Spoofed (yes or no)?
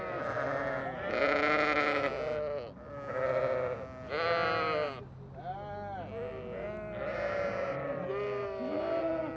no